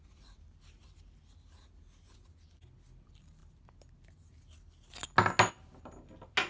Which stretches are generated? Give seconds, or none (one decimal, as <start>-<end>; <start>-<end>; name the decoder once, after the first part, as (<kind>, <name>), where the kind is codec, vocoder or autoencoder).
none